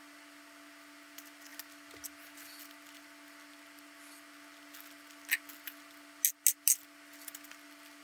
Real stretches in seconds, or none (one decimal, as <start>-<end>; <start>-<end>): 0.0-8.0